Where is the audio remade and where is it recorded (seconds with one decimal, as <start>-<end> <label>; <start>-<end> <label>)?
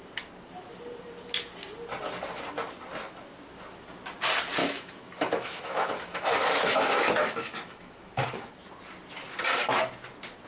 0.0-4.6 recorded; 4.6-8.5 remade; 8.5-10.5 recorded